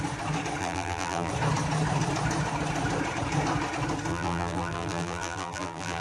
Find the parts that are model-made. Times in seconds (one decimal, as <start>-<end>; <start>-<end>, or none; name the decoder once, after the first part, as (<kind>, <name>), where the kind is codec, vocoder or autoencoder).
0.6-1.3 (vocoder, BigVGAN v2); 4.1-6.0